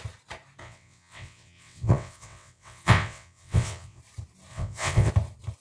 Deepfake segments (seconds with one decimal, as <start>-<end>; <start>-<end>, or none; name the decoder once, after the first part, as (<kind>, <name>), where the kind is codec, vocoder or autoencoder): 0.6-4.0 (vocoder, WaveNeXt); 4.5-5.1